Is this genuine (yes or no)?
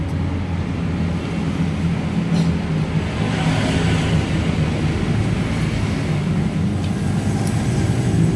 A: yes